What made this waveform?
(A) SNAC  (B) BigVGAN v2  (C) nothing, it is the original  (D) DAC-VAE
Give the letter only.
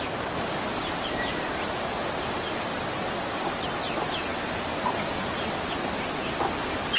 C